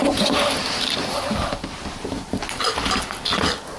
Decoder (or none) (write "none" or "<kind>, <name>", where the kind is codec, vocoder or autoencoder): none